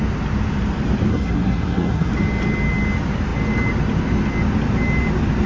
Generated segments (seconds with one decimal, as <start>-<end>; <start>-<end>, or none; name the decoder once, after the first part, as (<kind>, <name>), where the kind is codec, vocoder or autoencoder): 1.1-2.1 (codec, SNAC)